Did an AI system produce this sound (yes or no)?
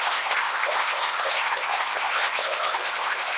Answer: yes